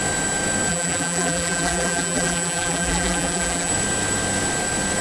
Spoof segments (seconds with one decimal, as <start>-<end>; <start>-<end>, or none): 0.7-3.7